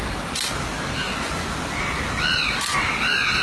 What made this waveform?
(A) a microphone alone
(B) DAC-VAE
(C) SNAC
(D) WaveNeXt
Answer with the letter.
A